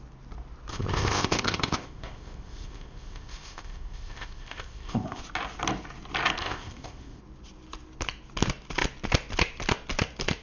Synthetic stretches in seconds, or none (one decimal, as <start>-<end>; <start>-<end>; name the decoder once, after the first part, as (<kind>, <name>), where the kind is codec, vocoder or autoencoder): 0.7-5.2 (codec, ZipCodec); 6.4-7.2